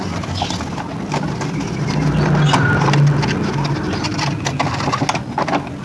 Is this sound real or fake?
real